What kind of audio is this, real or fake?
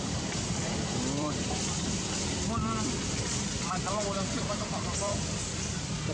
fake